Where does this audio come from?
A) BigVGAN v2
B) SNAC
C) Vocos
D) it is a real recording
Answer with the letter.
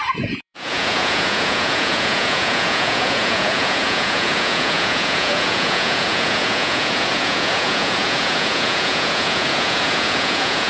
C